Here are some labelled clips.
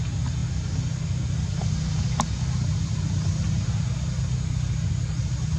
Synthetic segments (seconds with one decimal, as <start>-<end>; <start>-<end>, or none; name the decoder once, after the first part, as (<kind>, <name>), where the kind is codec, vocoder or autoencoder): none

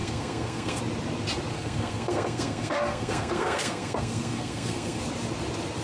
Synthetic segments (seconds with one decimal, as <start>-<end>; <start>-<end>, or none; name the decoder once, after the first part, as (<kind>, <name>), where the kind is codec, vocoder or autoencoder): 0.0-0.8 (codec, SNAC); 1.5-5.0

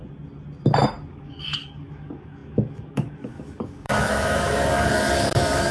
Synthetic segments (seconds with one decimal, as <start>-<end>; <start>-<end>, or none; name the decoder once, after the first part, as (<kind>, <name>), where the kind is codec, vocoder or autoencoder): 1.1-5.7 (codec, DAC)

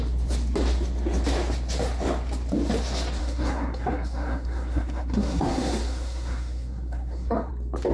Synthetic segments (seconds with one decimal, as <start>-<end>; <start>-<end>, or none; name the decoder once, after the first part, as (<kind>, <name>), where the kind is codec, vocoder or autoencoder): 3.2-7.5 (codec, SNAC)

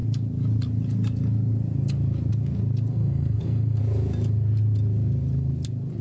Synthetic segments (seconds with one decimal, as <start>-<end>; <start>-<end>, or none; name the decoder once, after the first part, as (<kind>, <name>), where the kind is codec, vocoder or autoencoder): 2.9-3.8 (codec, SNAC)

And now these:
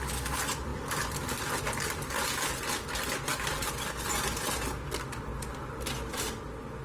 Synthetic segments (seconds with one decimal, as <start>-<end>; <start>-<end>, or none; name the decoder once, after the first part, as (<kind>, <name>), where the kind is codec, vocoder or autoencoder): 0.7-2.2 (vocoder, BigVGAN v2); 3.3-4.2